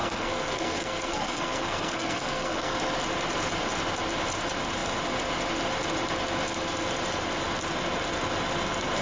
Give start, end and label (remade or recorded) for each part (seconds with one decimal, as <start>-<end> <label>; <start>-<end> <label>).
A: 0.0-2.8 remade; 2.8-9.0 recorded